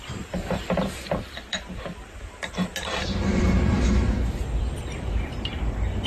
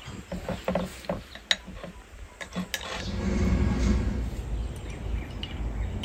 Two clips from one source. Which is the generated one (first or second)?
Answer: first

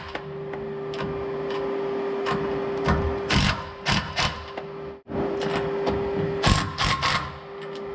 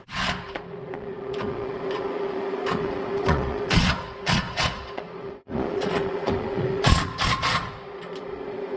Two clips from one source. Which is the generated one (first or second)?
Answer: second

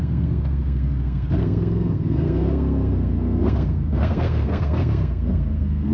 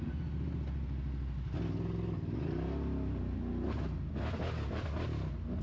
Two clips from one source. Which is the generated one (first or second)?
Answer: first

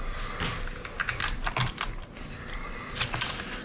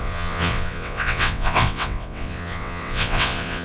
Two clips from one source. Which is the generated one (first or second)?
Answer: second